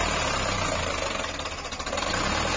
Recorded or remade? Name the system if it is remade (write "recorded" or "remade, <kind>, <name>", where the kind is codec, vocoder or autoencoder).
recorded